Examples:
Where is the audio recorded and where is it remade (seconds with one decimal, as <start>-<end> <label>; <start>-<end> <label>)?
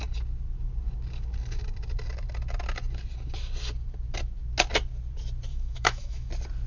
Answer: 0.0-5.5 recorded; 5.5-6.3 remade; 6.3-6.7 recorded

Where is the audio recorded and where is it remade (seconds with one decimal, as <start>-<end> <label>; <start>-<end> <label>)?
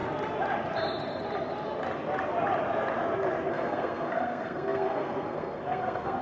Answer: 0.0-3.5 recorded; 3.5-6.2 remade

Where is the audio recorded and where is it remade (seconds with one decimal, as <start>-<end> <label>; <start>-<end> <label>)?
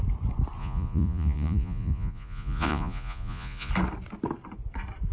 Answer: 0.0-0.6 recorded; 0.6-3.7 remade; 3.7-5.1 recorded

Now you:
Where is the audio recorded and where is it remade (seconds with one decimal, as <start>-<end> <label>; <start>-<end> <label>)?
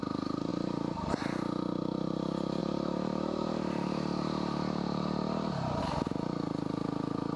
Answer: 0.0-0.5 recorded; 0.5-1.1 remade; 1.1-2.6 recorded; 2.6-5.8 remade; 5.8-7.4 recorded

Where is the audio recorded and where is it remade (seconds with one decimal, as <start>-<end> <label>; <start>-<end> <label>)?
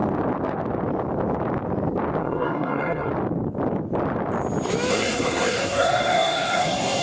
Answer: 0.0-2.2 recorded; 2.2-3.1 remade; 3.1-4.9 recorded; 4.9-7.0 remade